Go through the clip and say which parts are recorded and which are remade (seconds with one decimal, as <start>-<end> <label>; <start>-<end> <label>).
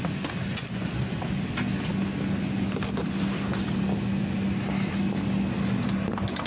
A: 0.0-0.5 recorded; 0.5-1.0 remade; 1.0-6.5 recorded